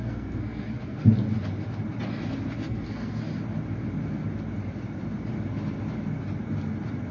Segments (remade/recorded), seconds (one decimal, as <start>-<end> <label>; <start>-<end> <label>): 0.0-1.1 remade; 1.1-2.6 recorded; 2.6-3.2 remade; 3.2-7.1 recorded